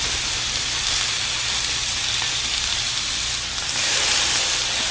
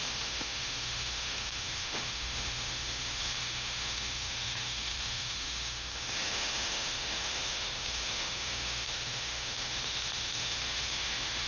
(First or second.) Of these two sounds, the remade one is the second